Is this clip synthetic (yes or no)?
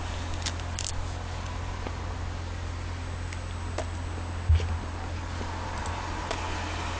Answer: no